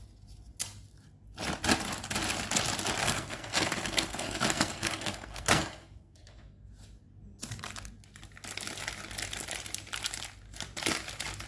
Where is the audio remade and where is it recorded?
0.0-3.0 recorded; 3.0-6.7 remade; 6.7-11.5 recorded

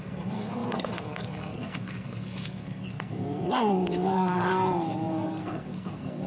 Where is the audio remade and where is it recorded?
0.0-6.3 remade

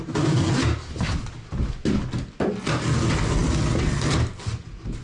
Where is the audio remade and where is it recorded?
0.0-5.0 recorded

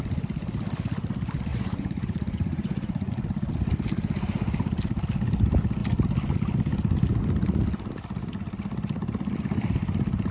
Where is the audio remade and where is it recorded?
0.0-1.5 recorded; 1.5-3.1 remade; 3.1-10.3 recorded

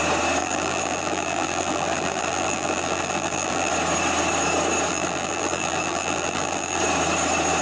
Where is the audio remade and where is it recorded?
0.0-0.4 recorded; 0.4-3.7 remade; 3.7-4.9 recorded; 4.9-6.8 remade; 6.8-7.6 recorded

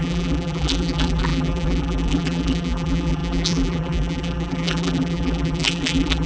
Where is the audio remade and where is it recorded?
0.0-6.3 remade

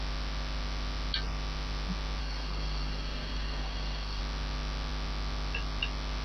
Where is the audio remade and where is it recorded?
0.0-2.2 recorded; 2.2-4.2 remade; 4.2-6.2 recorded

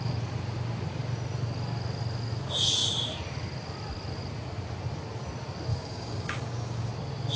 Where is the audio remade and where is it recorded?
0.0-5.7 recorded; 5.7-6.9 remade; 6.9-7.4 recorded